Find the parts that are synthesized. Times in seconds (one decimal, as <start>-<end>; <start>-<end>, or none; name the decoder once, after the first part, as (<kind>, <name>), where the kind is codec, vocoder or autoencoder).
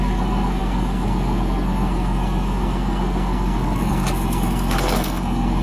0.0-5.6 (codec, SNAC)